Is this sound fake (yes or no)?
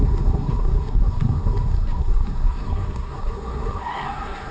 yes